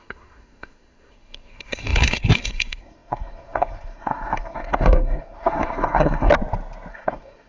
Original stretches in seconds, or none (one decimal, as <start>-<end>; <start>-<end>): 6.3-6.9